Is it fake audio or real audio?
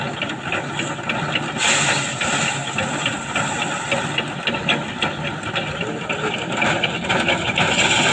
real